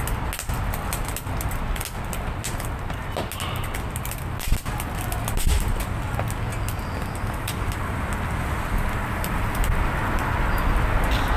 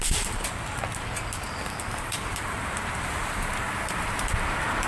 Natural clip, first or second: first